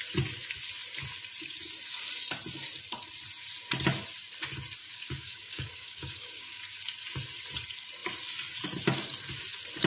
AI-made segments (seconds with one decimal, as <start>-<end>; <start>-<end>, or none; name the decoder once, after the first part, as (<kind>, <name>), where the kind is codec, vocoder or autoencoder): 4.8-6.6 (codec, DAC)